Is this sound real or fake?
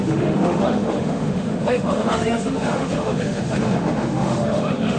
fake